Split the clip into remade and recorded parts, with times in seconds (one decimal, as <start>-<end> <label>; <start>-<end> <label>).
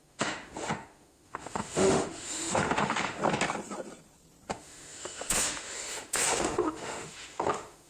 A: 0.0-3.2 remade; 3.2-4.5 recorded; 4.5-7.9 remade